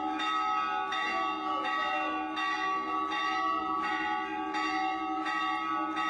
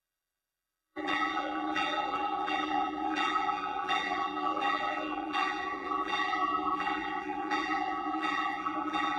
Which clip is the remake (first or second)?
second